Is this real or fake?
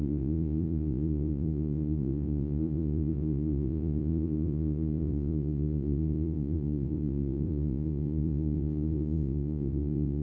fake